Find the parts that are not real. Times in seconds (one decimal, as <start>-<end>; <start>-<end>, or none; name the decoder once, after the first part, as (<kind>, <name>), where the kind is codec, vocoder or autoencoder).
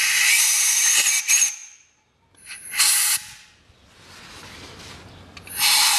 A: none